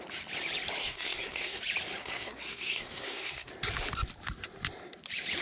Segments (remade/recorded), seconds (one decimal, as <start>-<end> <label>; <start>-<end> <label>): 0.0-0.8 recorded; 0.8-1.6 remade; 1.6-2.0 recorded; 2.0-3.5 remade; 3.5-5.4 recorded

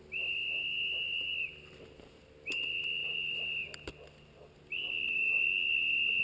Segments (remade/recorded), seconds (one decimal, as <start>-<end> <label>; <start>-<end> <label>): 0.0-6.2 recorded

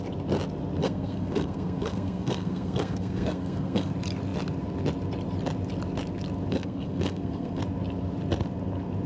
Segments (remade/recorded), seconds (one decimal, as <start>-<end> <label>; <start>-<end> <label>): 0.0-0.8 recorded; 0.8-3.9 remade; 3.9-6.5 recorded; 6.5-7.6 remade; 7.6-9.1 recorded

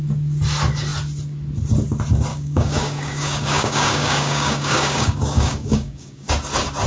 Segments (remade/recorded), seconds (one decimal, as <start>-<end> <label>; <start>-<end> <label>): 0.0-2.3 recorded; 2.3-6.3 remade; 6.3-6.9 recorded

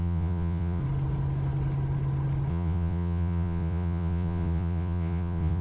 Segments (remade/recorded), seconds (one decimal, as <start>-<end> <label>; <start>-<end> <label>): 0.0-0.8 remade; 0.8-2.5 recorded; 2.5-5.6 remade

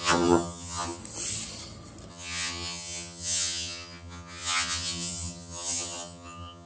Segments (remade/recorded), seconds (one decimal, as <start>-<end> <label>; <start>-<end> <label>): 0.0-1.0 remade; 1.0-2.1 recorded; 2.1-6.7 remade

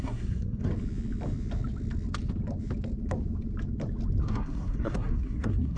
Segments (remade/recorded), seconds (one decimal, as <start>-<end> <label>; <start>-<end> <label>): 0.0-0.7 remade; 0.7-4.2 recorded; 4.2-5.8 remade

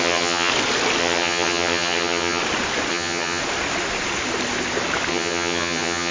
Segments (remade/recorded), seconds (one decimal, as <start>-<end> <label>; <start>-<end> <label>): 0.0-0.5 remade; 0.5-1.0 recorded; 1.0-2.4 remade; 2.4-2.9 recorded; 2.9-3.4 remade; 3.4-5.1 recorded; 5.1-6.1 remade